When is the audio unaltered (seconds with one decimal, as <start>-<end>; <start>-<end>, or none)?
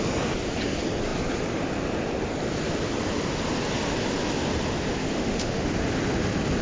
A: 0.0-5.0; 5.8-6.6